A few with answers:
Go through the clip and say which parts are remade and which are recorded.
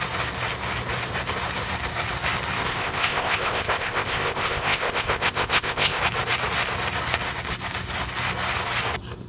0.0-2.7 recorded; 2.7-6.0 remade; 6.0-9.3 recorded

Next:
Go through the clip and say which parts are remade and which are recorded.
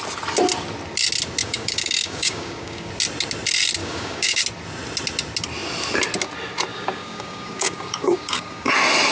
0.0-1.4 recorded; 1.4-2.9 remade; 2.9-3.8 recorded; 3.8-4.4 remade; 4.4-6.7 recorded; 6.7-8.7 remade; 8.7-9.1 recorded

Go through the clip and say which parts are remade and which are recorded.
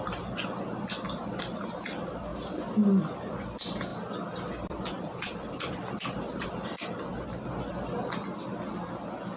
0.0-9.4 recorded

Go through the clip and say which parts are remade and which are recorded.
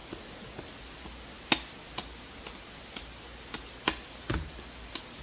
0.0-5.2 recorded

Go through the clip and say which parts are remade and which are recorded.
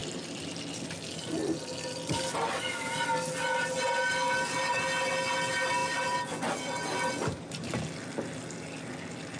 0.0-9.4 recorded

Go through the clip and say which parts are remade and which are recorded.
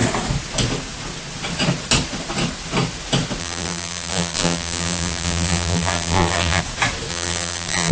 0.0-3.4 recorded; 3.4-6.6 remade; 6.6-7.1 recorded; 7.1-7.9 remade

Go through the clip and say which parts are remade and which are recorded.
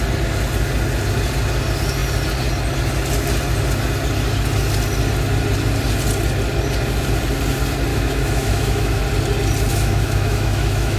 0.0-7.9 recorded; 7.9-9.0 remade; 9.0-9.7 recorded; 9.7-11.0 remade